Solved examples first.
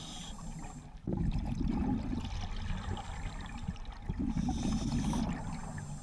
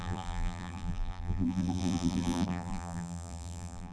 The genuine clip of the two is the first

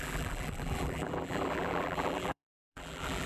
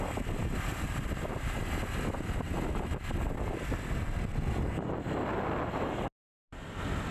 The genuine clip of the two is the second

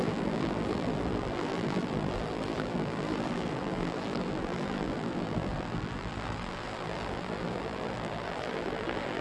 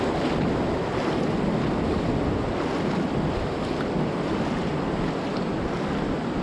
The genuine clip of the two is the second